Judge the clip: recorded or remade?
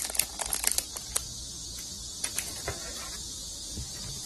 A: recorded